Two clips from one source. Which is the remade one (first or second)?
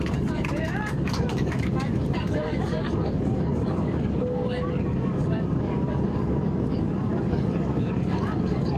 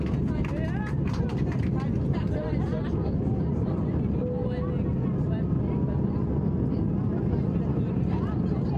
first